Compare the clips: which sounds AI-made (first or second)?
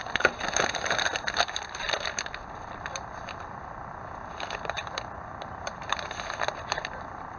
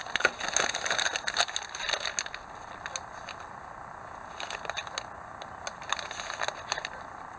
first